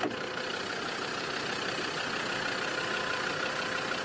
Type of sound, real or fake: real